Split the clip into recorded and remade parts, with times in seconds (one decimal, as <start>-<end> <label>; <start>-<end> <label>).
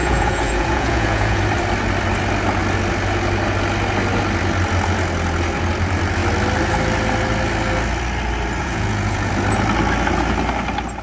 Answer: 0.0-1.4 remade; 1.4-8.6 recorded; 8.6-9.3 remade; 9.3-11.0 recorded